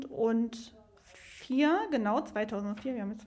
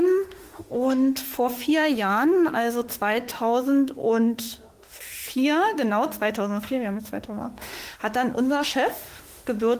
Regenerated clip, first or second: second